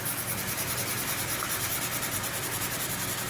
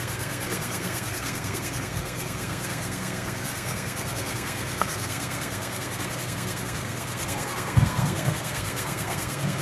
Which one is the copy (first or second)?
second